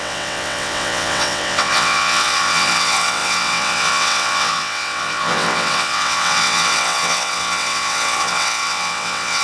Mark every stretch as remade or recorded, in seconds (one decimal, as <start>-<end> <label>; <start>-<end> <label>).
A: 0.0-9.4 remade